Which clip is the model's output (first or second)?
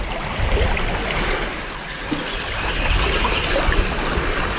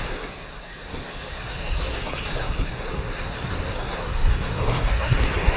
second